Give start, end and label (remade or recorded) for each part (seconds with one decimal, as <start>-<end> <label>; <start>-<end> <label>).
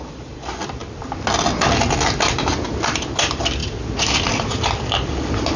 0.0-5.6 recorded